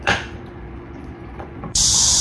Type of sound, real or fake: fake